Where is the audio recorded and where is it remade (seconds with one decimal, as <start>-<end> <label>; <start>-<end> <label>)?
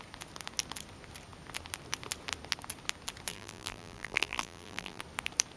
0.0-3.3 recorded; 3.3-5.0 remade; 5.0-5.6 recorded